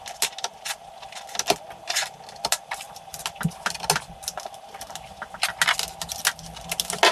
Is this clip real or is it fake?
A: real